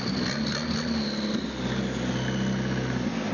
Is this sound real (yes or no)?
yes